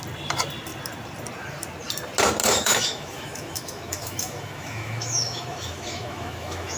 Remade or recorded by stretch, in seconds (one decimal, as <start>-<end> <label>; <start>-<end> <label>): 0.0-2.4 recorded; 2.4-6.8 remade

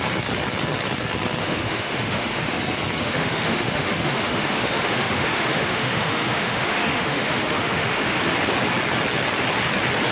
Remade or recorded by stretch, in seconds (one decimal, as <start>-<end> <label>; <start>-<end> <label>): 0.0-1.4 recorded; 1.4-2.6 remade; 2.6-3.0 recorded; 3.0-8.2 remade; 8.2-10.1 recorded

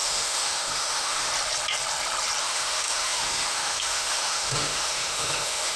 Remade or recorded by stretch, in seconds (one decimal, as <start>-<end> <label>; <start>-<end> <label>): 0.0-1.3 remade; 1.3-2.4 recorded; 2.4-5.8 remade

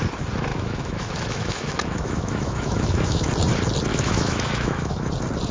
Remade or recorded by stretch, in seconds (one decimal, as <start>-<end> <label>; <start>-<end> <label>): 0.0-0.5 recorded; 0.5-3.3 remade; 3.3-3.9 recorded; 3.9-5.1 remade; 5.1-5.5 recorded

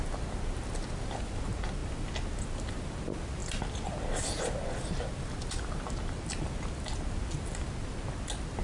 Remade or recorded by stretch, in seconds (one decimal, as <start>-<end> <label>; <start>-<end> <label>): 0.0-8.6 recorded

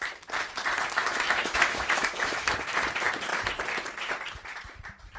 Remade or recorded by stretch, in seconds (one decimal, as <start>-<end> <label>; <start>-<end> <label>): 0.0-1.0 recorded; 1.0-2.5 remade; 2.5-5.2 recorded

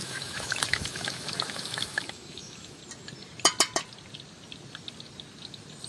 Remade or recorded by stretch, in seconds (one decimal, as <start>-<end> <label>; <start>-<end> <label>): 0.0-2.8 remade; 2.8-5.9 recorded